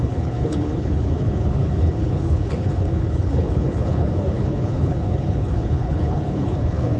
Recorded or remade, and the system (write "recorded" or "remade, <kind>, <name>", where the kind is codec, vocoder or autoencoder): remade, codec, HILCodec